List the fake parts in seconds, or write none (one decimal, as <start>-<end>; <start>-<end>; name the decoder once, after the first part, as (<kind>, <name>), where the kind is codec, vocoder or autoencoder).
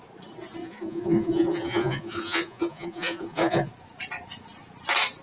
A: 0.6-3.7 (vocoder, Vocos)